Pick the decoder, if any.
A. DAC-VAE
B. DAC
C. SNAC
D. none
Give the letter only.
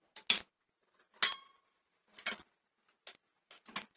D